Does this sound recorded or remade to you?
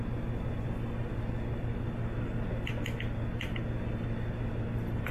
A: recorded